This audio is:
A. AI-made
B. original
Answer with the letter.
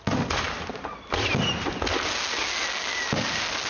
B